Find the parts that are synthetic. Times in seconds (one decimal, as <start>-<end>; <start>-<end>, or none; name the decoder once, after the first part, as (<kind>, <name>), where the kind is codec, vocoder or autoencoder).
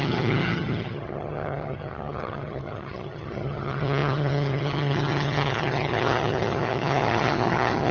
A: 0.0-7.9 (vocoder, HiFi-GAN)